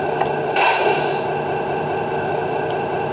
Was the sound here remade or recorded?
recorded